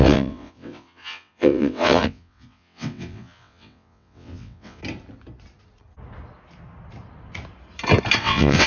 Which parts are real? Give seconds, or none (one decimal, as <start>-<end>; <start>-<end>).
4.8-8.2